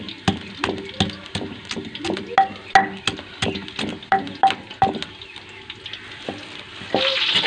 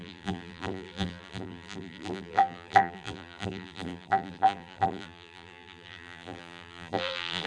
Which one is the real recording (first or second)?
first